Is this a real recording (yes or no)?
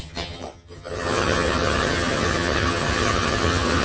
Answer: no